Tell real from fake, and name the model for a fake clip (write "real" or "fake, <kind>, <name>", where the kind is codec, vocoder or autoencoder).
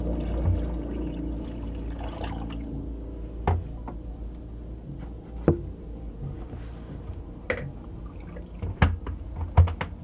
real